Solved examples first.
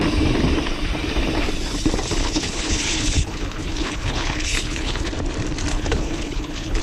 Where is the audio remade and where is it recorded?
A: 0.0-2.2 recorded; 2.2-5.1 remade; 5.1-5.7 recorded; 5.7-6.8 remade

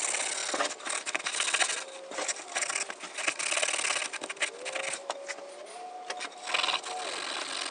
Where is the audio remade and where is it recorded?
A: 0.0-7.7 recorded

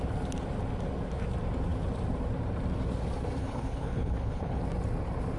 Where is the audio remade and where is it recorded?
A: 0.0-3.4 recorded; 3.4-4.6 remade; 4.6-5.4 recorded

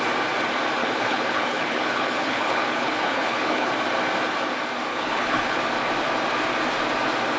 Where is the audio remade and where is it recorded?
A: 0.0-0.8 recorded; 0.8-3.7 remade; 3.7-4.9 recorded; 4.9-5.6 remade; 5.6-7.4 recorded

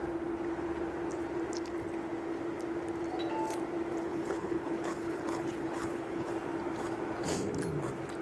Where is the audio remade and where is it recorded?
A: 0.0-4.1 recorded; 4.1-6.3 remade; 6.3-8.2 recorded